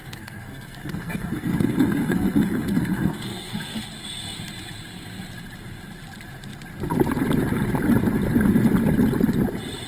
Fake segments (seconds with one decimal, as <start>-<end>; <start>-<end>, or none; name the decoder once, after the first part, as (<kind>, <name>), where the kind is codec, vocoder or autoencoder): 0.0-3.8 (codec, SNAC)